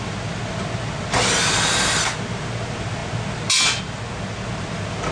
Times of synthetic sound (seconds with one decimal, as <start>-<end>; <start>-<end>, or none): none